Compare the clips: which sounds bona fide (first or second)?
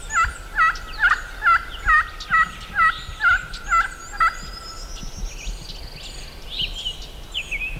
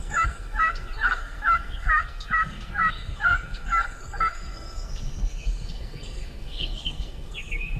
first